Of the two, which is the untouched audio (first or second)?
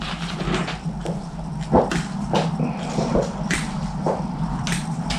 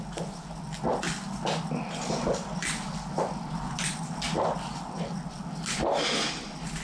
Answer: second